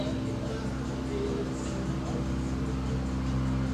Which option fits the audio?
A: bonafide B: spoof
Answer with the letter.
A